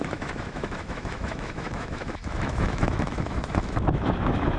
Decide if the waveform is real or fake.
fake